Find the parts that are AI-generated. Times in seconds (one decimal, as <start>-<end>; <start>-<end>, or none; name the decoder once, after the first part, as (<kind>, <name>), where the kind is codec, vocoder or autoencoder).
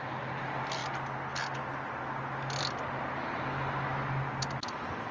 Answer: none